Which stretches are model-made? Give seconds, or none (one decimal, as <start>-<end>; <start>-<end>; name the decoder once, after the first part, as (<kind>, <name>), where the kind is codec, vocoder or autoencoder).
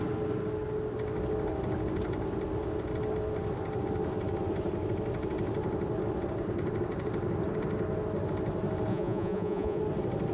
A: 8.9-9.8 (vocoder, Vocos)